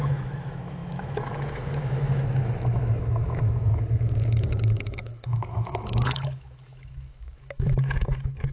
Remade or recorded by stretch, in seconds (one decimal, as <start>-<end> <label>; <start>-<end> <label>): 0.0-8.5 remade